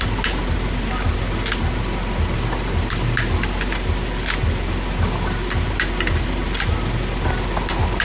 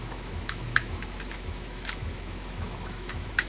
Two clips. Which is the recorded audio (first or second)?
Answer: first